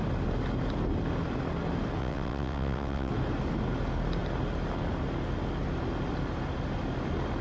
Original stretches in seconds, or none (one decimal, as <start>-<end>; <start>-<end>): 0.0-2.0; 3.1-7.4